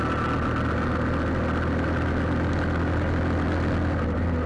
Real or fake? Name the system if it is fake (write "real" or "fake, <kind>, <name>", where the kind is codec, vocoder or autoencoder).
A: real